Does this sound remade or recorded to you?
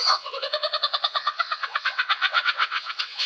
remade